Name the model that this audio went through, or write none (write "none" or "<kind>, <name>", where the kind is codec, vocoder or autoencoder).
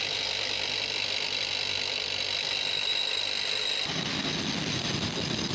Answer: none